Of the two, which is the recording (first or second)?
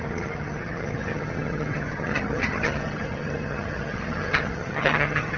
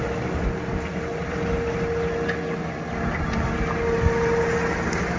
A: second